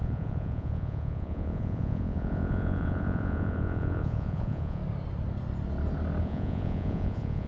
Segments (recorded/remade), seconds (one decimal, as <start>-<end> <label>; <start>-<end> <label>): 0.0-4.8 remade; 4.8-6.2 recorded; 6.2-7.5 remade